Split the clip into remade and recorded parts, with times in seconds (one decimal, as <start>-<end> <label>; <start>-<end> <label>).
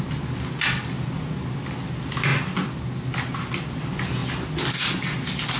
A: 0.0-5.6 recorded